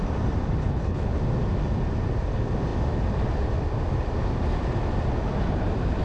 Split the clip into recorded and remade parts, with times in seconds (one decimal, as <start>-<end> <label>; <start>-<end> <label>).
0.0-0.6 recorded; 0.6-1.1 remade; 1.1-6.0 recorded